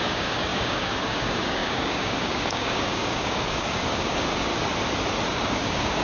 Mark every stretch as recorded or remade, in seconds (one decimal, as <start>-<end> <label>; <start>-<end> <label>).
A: 0.0-4.5 remade; 4.5-5.3 recorded; 5.3-6.0 remade